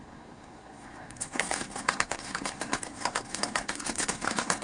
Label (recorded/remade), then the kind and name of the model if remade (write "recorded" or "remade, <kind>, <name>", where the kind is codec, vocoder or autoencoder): remade, codec, SNAC